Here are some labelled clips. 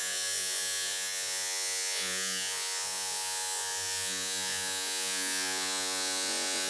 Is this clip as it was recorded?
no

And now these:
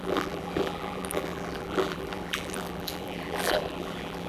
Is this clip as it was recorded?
no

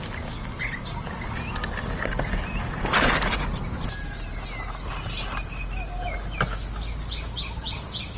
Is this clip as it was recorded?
yes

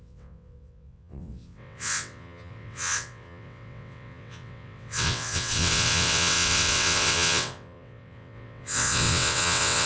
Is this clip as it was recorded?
no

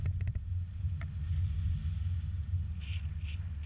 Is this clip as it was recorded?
yes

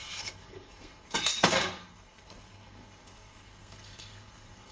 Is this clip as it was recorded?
no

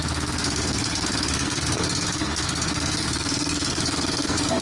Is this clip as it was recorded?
no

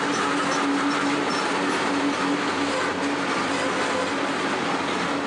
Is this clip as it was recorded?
yes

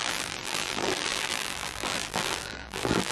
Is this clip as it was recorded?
no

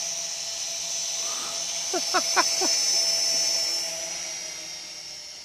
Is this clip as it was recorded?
yes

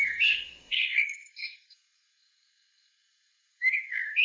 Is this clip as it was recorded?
no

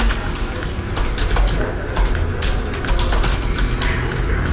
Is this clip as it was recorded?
yes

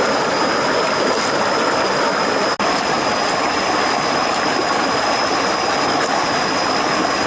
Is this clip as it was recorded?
yes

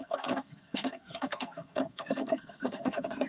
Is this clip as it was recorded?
no